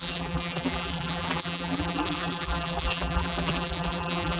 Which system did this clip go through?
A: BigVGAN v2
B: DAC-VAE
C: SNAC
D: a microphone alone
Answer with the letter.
A